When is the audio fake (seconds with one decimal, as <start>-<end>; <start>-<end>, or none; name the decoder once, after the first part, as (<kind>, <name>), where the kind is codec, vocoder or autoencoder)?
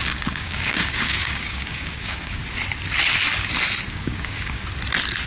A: 0.0-2.4 (codec, DAC); 3.9-4.6